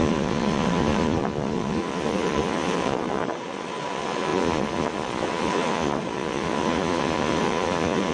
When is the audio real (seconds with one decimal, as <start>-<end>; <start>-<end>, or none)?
none

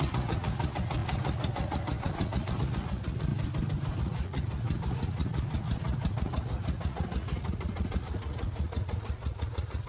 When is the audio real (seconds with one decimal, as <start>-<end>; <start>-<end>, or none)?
3.3-4.0

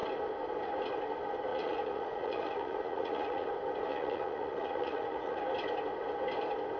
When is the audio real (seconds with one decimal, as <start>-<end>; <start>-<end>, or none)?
0.0-1.5; 3.5-3.9; 5.4-6.8

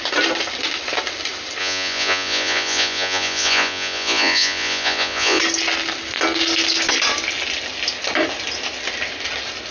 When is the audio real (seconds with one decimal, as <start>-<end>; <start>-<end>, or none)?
0.0-1.6; 5.4-9.7

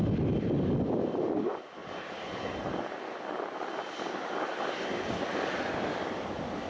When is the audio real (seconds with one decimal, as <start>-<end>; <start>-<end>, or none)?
0.0-6.7